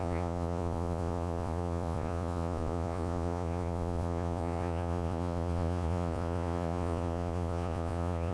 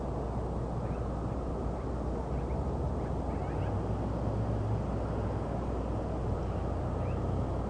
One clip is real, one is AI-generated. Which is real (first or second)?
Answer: second